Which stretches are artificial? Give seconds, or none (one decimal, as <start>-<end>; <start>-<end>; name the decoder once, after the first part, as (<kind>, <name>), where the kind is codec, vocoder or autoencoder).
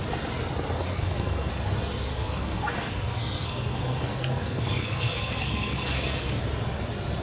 0.9-1.5 (codec, SNAC); 2.1-6.4